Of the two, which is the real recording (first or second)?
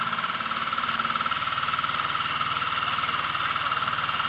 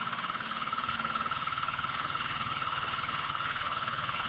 first